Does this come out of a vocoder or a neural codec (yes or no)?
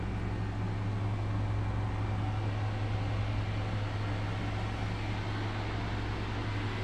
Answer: no